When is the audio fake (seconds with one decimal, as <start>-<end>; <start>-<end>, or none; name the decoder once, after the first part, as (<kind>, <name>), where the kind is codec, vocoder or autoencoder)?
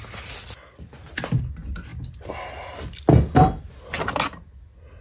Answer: none